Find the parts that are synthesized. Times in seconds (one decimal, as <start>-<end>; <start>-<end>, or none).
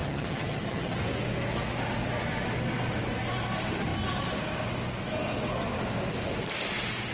0.0-1.0